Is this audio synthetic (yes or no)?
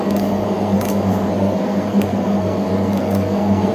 yes